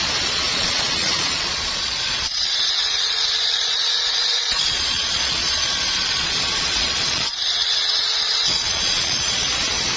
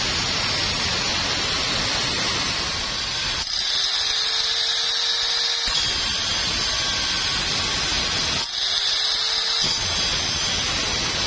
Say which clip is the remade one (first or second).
first